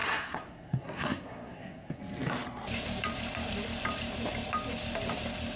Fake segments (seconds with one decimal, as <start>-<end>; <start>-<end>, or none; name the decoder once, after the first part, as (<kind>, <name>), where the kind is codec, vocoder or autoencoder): 0.0-2.0 (codec, SNAC)